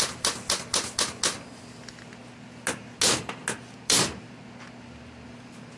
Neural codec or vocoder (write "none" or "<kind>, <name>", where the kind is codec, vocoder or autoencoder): none